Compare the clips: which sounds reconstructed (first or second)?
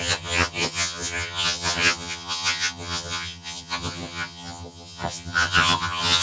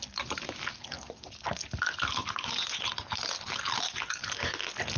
first